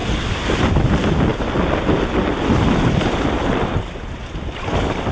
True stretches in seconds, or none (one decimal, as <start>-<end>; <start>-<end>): 0.0-5.1

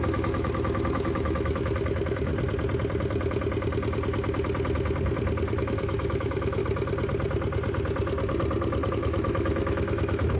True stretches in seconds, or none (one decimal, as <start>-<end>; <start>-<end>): 2.3-5.6; 6.6-8.9

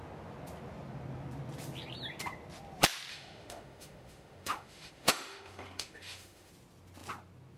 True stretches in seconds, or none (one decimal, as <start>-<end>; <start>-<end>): 0.0-3.1; 6.5-7.6

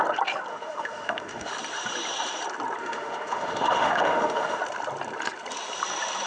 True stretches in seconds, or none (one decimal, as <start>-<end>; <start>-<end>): 0.0-0.5; 1.5-2.8; 4.6-6.3

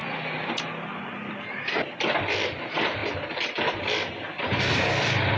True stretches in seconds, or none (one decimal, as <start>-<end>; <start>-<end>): 0.0-5.4

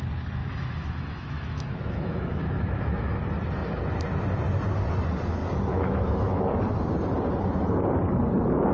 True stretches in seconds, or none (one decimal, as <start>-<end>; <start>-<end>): 0.0-0.4; 3.2-5.4; 6.4-8.7